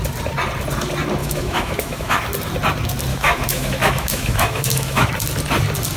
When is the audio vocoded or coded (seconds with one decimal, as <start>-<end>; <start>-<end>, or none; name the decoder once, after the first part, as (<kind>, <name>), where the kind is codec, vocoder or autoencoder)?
1.2-2.2 (autoencoder, DAC-VAE); 3.1-5.1